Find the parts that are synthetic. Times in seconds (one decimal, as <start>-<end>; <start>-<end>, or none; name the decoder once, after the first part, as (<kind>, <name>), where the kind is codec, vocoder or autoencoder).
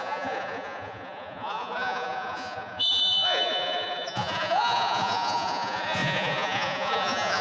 0.0-7.4 (vocoder, Vocos)